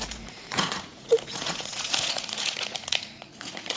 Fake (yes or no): yes